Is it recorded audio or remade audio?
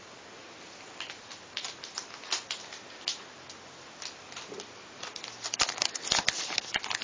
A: recorded